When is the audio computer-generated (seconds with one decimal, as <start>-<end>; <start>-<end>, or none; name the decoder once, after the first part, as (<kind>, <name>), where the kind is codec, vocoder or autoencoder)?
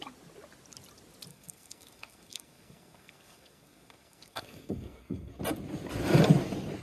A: 1.3-5.4 (codec, SNAC)